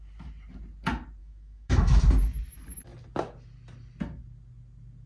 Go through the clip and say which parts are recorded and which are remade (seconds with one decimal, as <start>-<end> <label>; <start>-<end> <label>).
0.0-1.2 recorded; 1.2-2.0 remade; 2.0-5.1 recorded